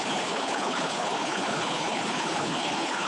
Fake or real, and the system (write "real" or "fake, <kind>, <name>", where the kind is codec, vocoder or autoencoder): fake, codec, HILCodec